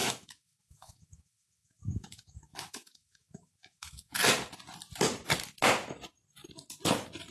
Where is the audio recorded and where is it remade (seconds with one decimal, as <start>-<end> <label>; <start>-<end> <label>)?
0.0-4.2 remade; 4.2-7.3 recorded